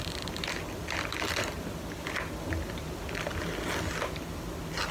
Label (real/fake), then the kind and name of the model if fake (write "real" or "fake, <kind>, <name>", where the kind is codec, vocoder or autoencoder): real